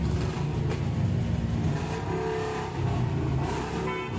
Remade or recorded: recorded